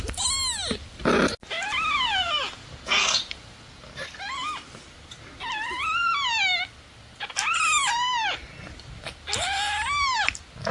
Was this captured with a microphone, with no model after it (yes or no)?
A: yes